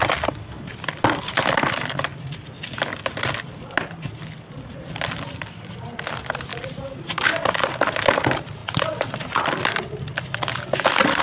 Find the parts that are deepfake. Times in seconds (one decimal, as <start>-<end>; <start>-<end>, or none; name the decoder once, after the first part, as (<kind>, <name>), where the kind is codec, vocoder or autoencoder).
2.1-2.9 (vocoder, BigVGAN v2); 8.6-10.5